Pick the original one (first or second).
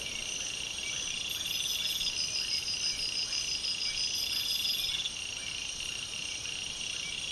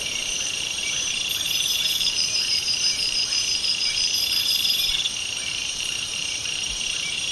first